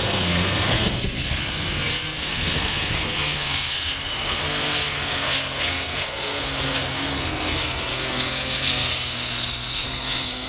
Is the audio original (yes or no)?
no